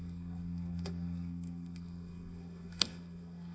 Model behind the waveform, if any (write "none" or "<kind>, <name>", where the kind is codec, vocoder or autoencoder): codec, SNAC